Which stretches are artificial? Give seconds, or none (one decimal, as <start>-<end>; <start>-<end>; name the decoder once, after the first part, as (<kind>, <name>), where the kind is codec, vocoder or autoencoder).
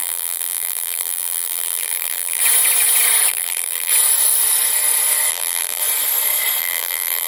0.0-2.4 (vocoder, BigVGAN v2); 3.3-3.9; 5.3-5.8; 6.6-7.3